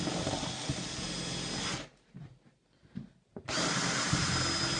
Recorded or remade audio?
recorded